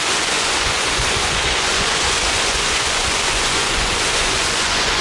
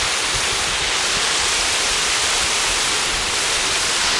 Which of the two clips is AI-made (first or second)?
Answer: first